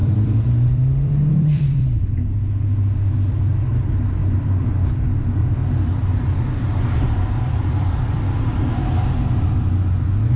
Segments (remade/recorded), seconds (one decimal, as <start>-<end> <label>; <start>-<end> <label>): 0.0-2.1 remade; 2.1-4.2 recorded; 4.2-4.7 remade; 4.7-5.4 recorded; 5.4-8.2 remade; 8.2-10.4 recorded